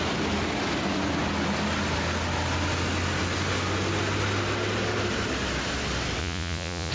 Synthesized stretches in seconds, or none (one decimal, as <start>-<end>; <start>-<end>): 6.2-6.9